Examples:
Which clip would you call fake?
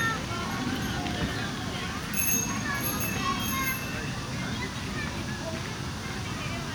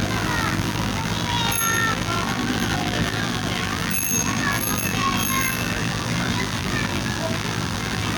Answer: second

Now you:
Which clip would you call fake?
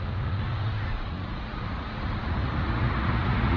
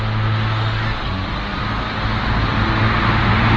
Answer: first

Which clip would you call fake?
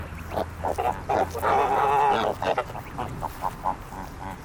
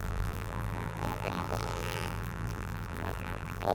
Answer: second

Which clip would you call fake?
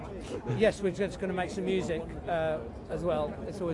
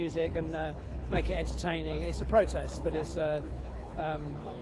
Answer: second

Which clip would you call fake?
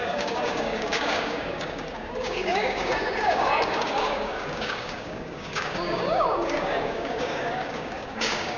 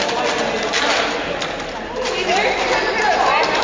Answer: first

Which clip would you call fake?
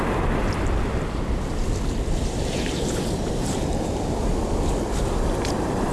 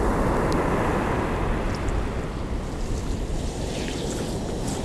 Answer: first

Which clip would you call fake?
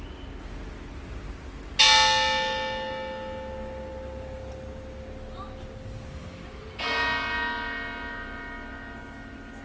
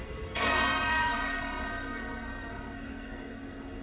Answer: second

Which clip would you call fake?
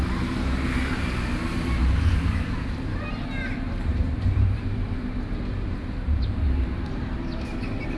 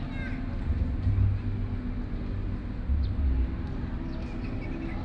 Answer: first